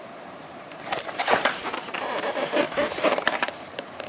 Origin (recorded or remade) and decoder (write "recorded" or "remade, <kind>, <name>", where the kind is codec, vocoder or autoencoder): remade, vocoder, BigVGAN v2